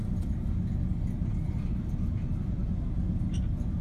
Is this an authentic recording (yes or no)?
yes